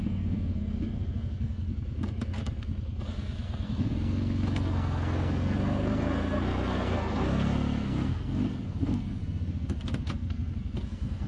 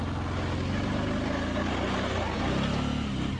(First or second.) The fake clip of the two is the first